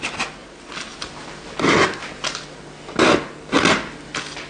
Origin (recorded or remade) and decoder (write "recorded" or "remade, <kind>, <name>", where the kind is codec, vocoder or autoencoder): recorded